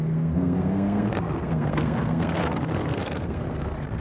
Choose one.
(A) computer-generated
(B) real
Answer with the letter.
A